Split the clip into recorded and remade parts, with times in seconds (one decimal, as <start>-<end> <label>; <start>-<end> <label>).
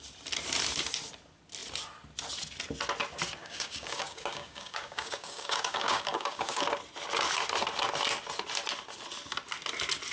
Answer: 0.0-3.4 recorded; 3.4-6.6 remade; 6.6-10.1 recorded